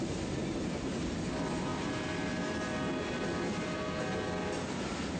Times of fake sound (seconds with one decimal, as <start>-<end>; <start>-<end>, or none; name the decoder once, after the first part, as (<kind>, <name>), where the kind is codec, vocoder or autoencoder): none